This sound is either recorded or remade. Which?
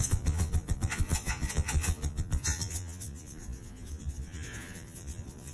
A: remade